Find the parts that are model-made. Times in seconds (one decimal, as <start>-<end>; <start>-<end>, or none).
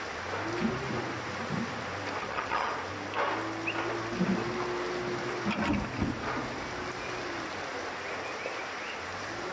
2.2-2.7